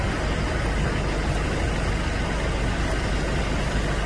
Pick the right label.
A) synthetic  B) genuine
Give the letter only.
B